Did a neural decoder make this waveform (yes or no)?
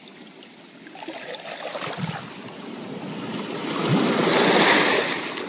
no